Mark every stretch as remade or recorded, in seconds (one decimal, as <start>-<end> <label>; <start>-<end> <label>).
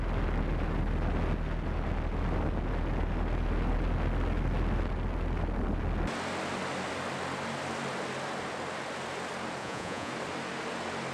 0.0-9.6 recorded; 9.6-10.1 remade; 10.1-11.1 recorded